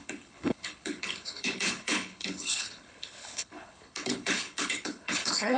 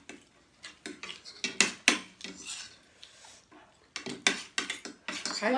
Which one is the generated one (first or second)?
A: first